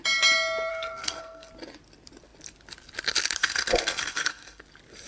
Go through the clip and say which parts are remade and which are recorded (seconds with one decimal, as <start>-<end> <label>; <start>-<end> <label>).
0.0-0.7 recorded; 0.7-1.5 remade; 1.5-3.4 recorded; 3.4-4.6 remade; 4.6-5.1 recorded